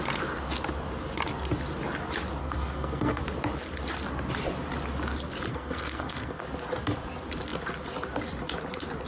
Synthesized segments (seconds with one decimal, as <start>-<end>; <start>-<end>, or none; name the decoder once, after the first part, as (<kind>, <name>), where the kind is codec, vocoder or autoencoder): 2.4-3.2 (codec, SNAC); 5.5-6.4